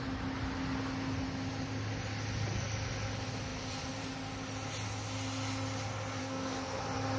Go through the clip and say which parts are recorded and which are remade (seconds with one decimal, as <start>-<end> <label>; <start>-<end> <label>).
0.0-6.2 recorded; 6.2-6.8 remade; 6.8-7.2 recorded